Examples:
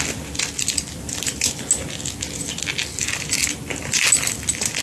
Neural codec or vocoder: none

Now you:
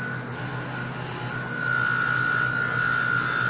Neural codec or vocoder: none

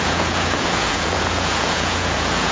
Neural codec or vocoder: vocoder, Vocos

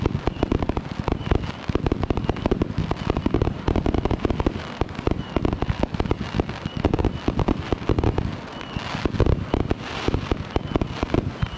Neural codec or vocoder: none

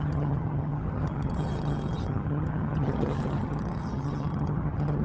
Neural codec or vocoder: vocoder, HiFi-GAN